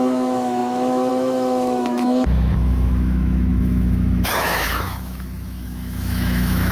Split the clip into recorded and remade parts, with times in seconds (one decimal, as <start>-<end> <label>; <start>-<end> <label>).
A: 0.0-6.7 remade